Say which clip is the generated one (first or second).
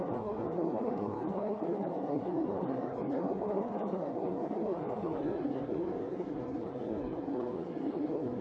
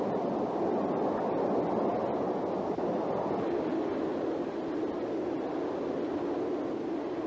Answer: first